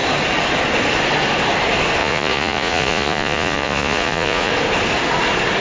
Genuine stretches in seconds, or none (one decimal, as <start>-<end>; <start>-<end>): 0.0-2.0; 4.5-5.6